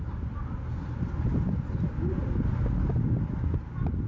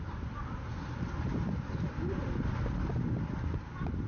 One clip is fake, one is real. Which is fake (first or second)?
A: second